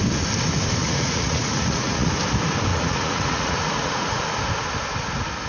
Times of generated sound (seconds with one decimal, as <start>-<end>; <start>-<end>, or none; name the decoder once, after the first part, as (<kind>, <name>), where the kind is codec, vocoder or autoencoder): 0.8-2.1 (vocoder, Vocos); 2.7-4.2